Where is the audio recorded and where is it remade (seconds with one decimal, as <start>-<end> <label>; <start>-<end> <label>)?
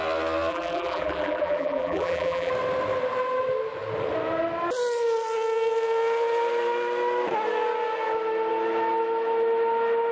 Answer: 0.0-0.5 recorded; 0.5-2.5 remade; 2.5-10.1 recorded